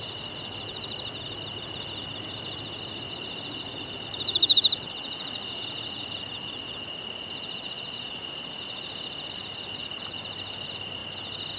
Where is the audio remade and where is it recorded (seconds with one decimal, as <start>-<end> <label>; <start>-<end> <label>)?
0.0-11.6 recorded